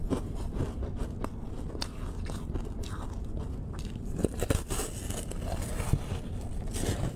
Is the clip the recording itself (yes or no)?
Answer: yes